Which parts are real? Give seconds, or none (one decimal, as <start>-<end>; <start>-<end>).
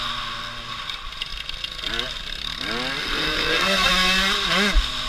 0.0-3.0; 3.9-5.1